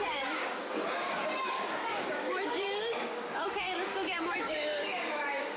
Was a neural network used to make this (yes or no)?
yes